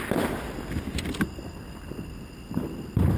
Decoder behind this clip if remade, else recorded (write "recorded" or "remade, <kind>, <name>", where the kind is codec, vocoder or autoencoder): recorded